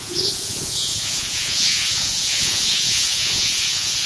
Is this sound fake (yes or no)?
yes